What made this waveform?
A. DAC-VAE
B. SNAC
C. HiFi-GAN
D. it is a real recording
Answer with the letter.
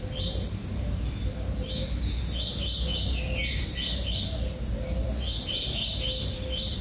D